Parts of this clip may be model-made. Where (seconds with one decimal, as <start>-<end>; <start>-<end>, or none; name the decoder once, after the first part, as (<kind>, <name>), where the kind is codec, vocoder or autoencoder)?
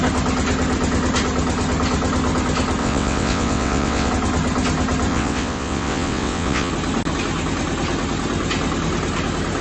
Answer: 2.8-4.1 (vocoder, WaveNeXt); 5.1-6.7